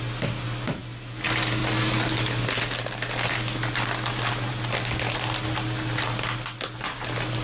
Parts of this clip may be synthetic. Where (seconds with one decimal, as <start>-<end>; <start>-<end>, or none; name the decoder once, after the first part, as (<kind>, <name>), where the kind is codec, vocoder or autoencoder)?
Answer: none